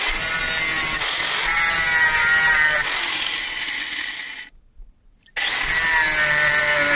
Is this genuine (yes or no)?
yes